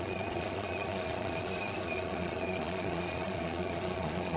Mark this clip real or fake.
fake